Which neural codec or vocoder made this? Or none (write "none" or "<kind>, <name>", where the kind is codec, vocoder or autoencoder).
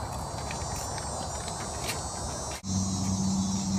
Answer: none